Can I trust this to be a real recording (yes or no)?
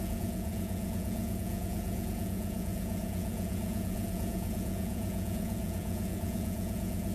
no